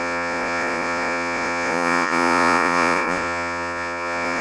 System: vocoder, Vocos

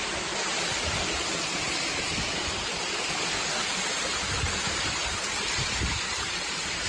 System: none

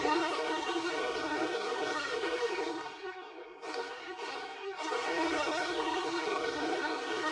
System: codec, SNAC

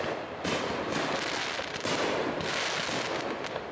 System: none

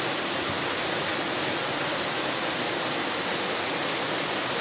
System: none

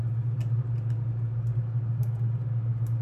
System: none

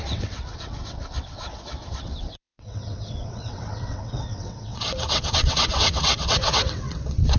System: vocoder, WaveNeXt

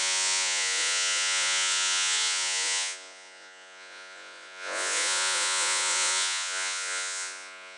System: vocoder, Vocos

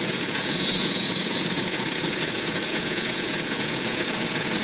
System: vocoder, Vocos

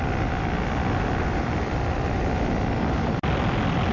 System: none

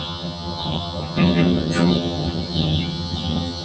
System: vocoder, HiFi-GAN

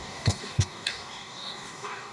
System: codec, DAC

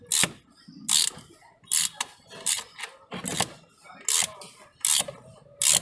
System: none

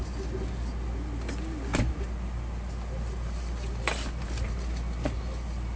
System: none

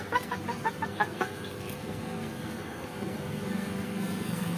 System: codec, SNAC